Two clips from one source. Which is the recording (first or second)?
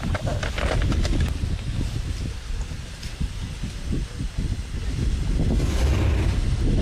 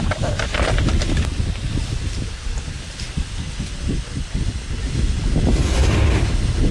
first